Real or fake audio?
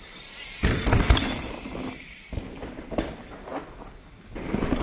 real